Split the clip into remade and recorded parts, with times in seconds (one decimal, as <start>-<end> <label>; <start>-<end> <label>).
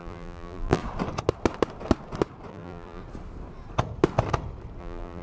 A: 0.0-0.8 remade; 0.8-2.5 recorded; 2.5-3.0 remade; 3.0-4.8 recorded; 4.8-5.2 remade